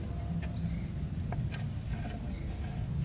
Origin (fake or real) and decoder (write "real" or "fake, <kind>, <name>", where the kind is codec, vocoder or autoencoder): real